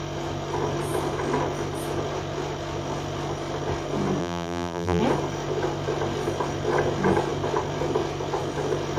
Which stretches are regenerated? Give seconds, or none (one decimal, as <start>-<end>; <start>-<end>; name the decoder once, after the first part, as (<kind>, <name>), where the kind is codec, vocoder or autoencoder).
4.2-5.0 (vocoder, BigVGAN v2)